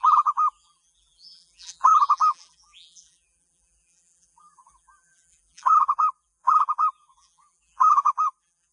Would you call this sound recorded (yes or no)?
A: no